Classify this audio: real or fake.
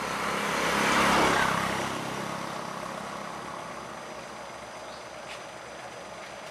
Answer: real